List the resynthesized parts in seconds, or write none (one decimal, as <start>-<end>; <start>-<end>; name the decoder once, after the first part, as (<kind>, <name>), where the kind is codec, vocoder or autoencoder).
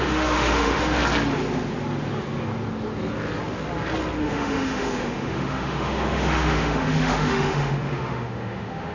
0.0-1.0 (autoencoder, DAC-VAE); 4.2-8.9